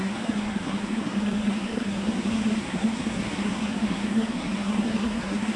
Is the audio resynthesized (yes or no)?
yes